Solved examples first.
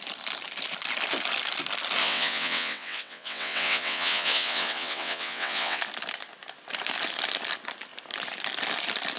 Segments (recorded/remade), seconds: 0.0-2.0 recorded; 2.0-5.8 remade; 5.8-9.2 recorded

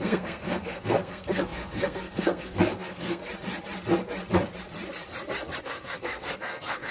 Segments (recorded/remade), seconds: 0.0-3.2 remade; 3.2-5.6 recorded; 5.6-6.9 remade

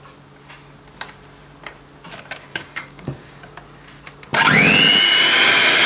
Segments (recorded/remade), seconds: 0.0-2.5 recorded; 2.5-3.5 remade; 3.5-5.9 recorded

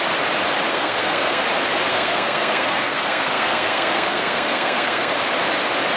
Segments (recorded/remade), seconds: 0.0-0.7 recorded; 0.7-1.4 remade; 1.4-1.9 recorded; 1.9-5.1 remade; 5.1-6.0 recorded

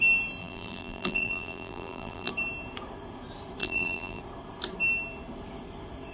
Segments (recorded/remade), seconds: 0.0-0.4 recorded; 0.4-2.3 remade; 2.3-3.6 recorded; 3.6-4.2 remade; 4.2-6.1 recorded